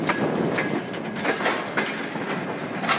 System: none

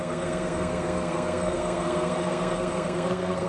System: codec, SNAC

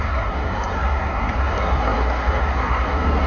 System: codec, SNAC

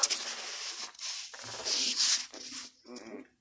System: none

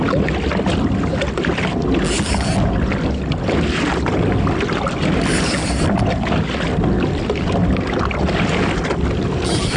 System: none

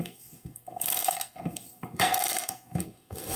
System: codec, SNAC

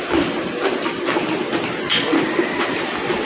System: none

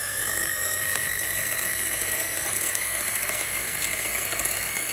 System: codec, SNAC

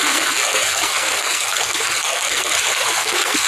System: codec, SNAC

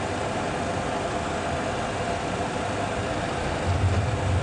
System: none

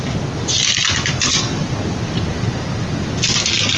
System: none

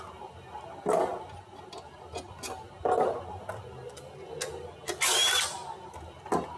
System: none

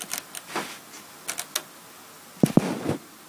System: none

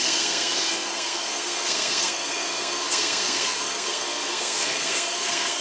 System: codec, SNAC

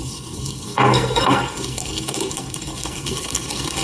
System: codec, SNAC